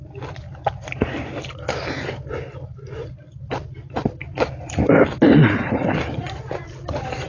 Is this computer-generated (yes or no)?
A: no